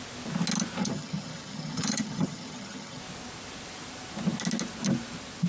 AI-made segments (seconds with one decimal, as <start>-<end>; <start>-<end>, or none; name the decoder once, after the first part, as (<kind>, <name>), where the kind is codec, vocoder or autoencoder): 0.8-3.0 (vocoder, HiFi-GAN)